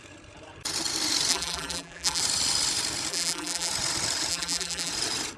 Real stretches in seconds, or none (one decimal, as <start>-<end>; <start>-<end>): 0.0-1.3; 2.2-3.1; 3.7-4.3; 4.9-5.4

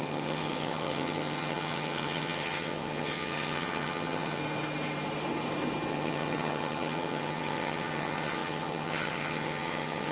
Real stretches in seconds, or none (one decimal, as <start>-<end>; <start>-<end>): 4.4-5.9

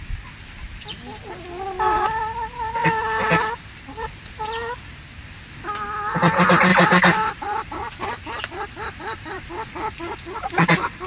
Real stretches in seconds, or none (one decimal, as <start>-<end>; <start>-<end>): 0.0-6.7; 9.5-11.1

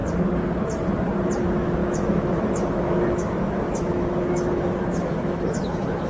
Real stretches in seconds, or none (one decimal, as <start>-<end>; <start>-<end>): 0.0-1.4

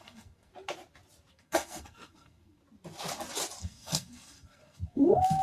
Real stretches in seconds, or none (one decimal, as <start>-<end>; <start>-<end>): 0.5-1.3; 2.6-3.6

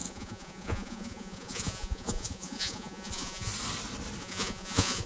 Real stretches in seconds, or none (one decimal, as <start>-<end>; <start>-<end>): 3.5-4.2

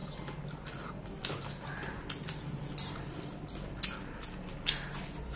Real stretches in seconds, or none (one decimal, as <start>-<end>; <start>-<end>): 0.0-5.4